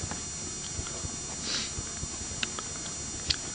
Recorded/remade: recorded